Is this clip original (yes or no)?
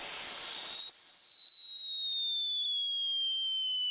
yes